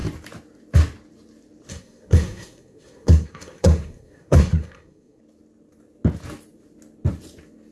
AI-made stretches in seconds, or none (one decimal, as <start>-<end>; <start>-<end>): 1.7-5.2